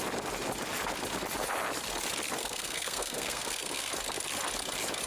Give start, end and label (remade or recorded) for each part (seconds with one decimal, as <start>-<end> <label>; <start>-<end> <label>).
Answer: 0.0-2.4 recorded; 2.4-3.9 remade; 3.9-5.1 recorded

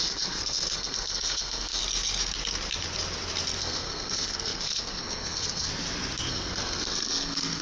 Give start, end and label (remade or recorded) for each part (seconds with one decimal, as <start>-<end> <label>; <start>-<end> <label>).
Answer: 0.0-1.8 remade; 1.8-3.6 recorded; 3.6-5.7 remade; 5.7-6.3 recorded; 6.3-7.6 remade

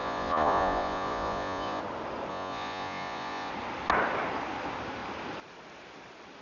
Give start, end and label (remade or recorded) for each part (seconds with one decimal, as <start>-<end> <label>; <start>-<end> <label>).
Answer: 0.0-1.8 remade; 1.8-2.3 recorded; 2.3-3.5 remade; 3.5-6.4 recorded